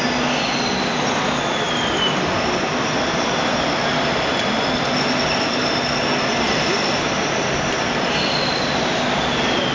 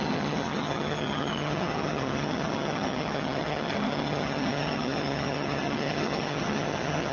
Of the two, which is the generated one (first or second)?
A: second